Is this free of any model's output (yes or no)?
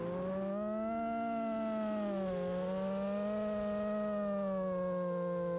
yes